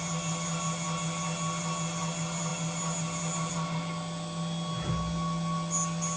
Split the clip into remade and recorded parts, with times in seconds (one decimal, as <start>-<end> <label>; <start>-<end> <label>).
0.0-6.2 recorded